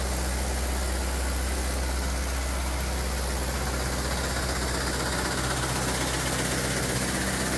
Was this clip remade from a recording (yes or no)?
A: no